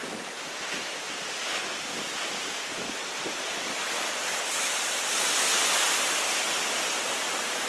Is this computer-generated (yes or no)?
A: no